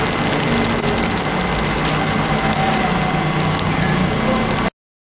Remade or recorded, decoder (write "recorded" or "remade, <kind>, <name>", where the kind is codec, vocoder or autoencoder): recorded